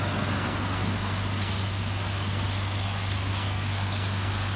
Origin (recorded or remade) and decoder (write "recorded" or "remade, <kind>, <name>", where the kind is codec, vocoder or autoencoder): remade, codec, SNAC